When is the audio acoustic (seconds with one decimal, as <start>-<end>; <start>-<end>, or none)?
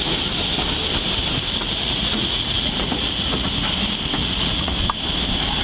0.0-1.6; 3.5-4.2; 4.8-5.6